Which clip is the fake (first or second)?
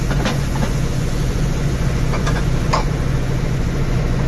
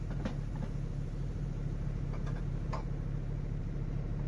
first